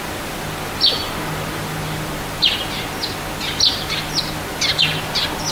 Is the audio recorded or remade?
recorded